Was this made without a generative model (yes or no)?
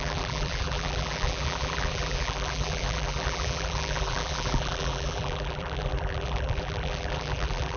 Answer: no